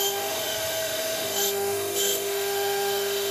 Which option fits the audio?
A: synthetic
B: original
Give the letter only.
A